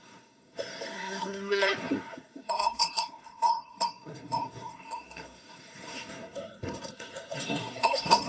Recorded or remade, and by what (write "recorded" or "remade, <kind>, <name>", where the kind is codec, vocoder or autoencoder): remade, codec, SNAC